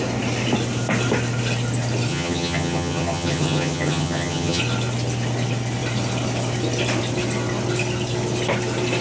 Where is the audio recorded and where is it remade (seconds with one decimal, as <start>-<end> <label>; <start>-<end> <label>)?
0.0-2.1 recorded; 2.1-4.6 remade; 4.6-9.0 recorded

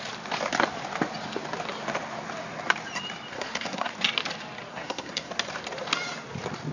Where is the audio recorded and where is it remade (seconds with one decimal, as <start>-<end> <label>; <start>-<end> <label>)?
0.0-3.3 recorded; 3.3-3.9 remade; 3.9-4.7 recorded; 4.7-5.3 remade; 5.3-6.7 recorded

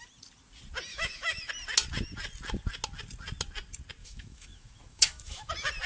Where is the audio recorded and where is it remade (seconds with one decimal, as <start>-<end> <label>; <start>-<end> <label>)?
0.0-0.9 recorded; 0.9-1.5 remade; 1.5-4.0 recorded; 4.0-5.5 remade; 5.5-5.9 recorded

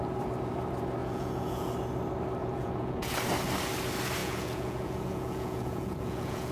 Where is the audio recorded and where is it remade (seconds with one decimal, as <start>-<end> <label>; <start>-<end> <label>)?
0.0-1.0 recorded; 1.0-1.7 remade; 1.7-2.4 recorded; 2.4-3.1 remade; 3.1-4.2 recorded; 4.2-6.5 remade

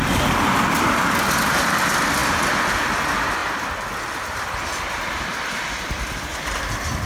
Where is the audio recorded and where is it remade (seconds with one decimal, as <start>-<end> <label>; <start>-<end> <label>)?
0.0-3.4 remade; 3.4-4.9 recorded; 4.9-6.3 remade; 6.3-7.1 recorded

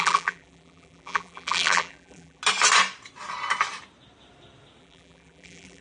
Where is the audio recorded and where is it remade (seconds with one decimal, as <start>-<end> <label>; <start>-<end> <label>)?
0.0-2.4 remade; 2.4-4.8 recorded; 4.8-5.8 remade

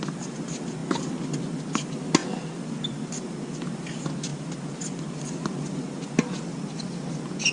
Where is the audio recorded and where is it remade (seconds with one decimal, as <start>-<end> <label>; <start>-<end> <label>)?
0.0-7.5 recorded

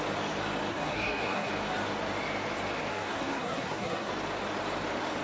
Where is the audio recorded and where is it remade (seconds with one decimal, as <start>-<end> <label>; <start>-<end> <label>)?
0.0-0.7 recorded; 0.7-1.5 remade; 1.5-2.9 recorded; 2.9-4.1 remade; 4.1-5.2 recorded